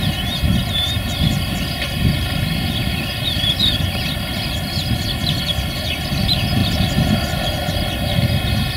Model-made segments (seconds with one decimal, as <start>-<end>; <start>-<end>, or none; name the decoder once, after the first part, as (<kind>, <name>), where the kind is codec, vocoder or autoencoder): 6.6-7.1 (vocoder, BigVGAN v2)